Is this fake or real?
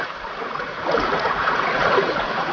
fake